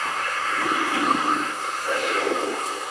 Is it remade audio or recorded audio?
remade